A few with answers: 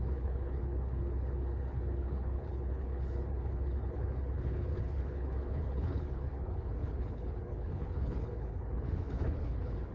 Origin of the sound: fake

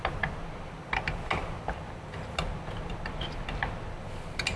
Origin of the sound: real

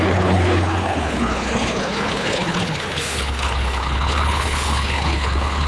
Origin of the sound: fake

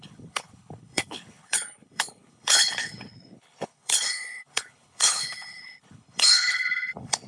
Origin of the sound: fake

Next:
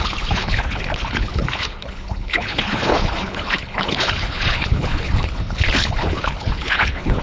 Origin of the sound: fake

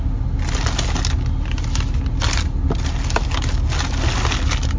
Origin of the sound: real